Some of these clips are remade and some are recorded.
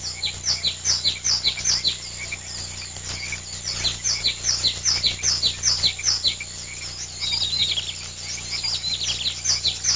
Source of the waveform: recorded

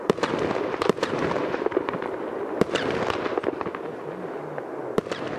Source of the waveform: recorded